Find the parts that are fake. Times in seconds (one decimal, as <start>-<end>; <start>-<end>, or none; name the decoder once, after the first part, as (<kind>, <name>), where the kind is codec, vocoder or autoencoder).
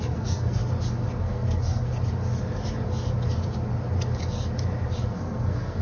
0.0-0.6 (codec, SNAC); 1.2-1.9; 5.1-5.8